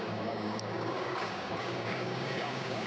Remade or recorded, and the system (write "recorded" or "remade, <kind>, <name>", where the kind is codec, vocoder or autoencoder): remade, codec, DAC